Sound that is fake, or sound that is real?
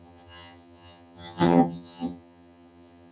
fake